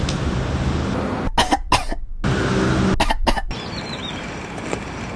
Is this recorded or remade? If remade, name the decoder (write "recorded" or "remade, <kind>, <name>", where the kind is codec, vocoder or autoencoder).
recorded